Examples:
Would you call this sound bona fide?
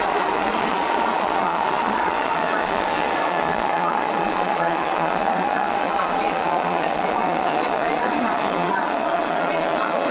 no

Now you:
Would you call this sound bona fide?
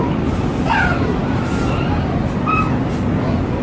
yes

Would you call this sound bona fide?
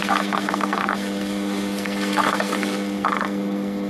no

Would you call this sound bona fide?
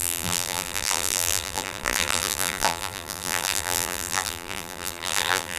no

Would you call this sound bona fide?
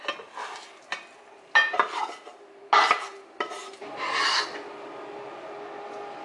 yes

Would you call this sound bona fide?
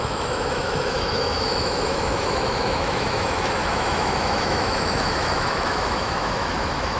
no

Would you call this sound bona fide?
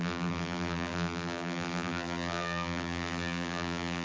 no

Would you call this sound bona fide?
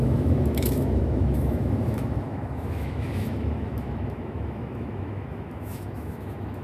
no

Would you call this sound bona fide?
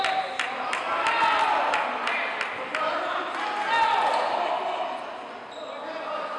yes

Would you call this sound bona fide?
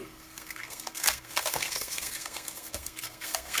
no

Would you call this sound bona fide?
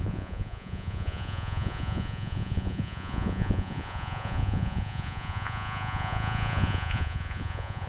no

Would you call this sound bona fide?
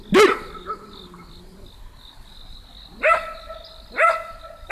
yes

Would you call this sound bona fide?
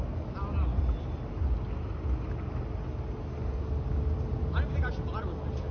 yes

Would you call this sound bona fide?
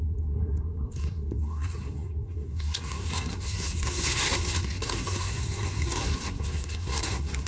no